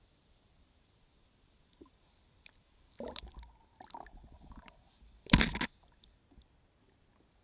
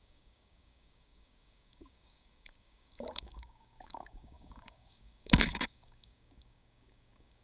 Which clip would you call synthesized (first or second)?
second